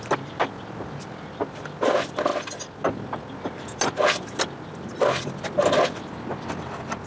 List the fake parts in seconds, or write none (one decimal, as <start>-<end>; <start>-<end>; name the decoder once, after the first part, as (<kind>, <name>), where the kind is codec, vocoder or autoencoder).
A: none